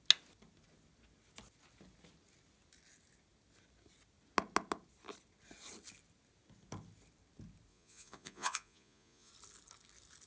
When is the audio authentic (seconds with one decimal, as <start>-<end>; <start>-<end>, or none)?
0.0-7.7; 9.3-10.3

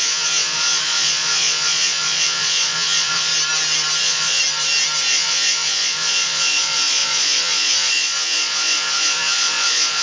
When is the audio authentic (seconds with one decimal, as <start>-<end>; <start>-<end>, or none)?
3.3-4.0; 4.4-5.1

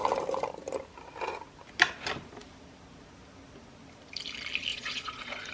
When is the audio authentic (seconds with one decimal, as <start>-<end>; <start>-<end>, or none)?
0.0-4.7

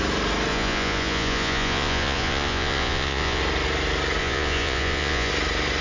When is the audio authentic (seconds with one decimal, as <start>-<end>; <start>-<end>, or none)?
0.0-0.5; 3.4-4.2; 5.3-5.8